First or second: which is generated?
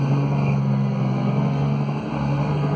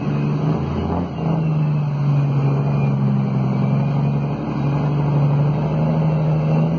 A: first